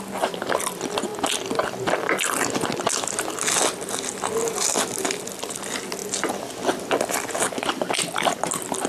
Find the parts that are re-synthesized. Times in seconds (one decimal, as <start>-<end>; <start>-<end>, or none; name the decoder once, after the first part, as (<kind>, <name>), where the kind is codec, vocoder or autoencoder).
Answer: none